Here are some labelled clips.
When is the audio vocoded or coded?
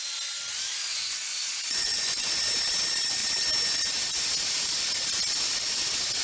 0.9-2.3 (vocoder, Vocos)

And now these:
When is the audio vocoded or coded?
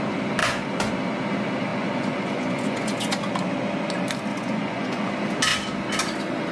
0.4-0.9 (vocoder, Vocos); 1.7-3.3; 4.3-5.1